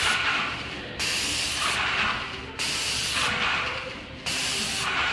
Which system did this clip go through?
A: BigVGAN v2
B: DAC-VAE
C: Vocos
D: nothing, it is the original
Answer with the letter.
D